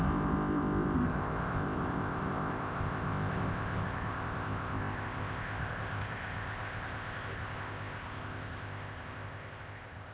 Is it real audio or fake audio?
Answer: fake